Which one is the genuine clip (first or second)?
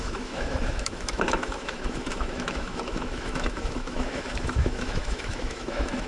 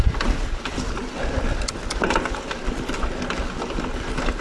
second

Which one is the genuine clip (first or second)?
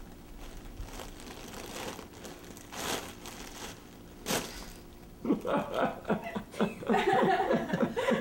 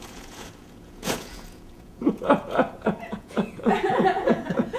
first